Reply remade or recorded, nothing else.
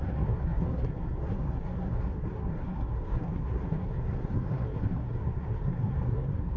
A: remade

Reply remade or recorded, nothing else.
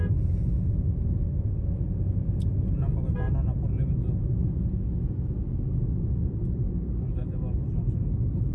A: recorded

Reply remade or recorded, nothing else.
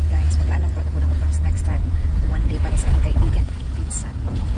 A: remade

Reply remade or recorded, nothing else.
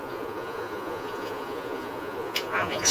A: remade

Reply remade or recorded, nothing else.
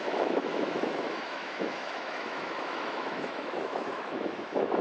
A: remade